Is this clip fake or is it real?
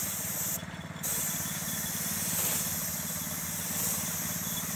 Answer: real